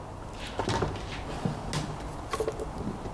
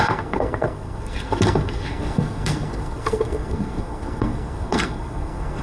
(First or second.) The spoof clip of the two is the second